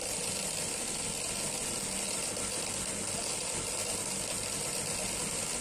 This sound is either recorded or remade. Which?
recorded